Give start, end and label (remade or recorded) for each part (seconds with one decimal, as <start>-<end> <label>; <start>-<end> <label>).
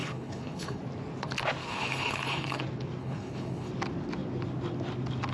0.0-0.8 remade; 0.8-1.6 recorded; 1.6-2.6 remade; 2.6-3.0 recorded; 3.0-3.7 remade; 3.7-5.3 recorded